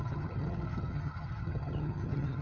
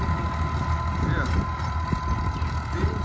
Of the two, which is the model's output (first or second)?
first